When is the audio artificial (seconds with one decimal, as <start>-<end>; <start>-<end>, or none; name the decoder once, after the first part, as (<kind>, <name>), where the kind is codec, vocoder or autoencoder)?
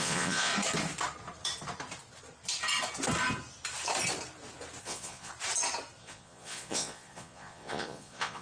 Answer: 0.0-0.5 (vocoder, Vocos); 4.8-5.3; 6.0-8.4